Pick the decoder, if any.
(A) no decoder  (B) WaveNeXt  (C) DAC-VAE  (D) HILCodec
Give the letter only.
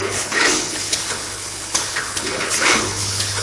D